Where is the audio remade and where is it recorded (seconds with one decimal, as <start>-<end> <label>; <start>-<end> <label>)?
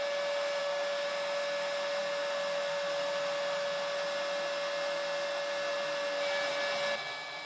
0.0-0.6 recorded; 0.6-1.1 remade; 1.1-7.5 recorded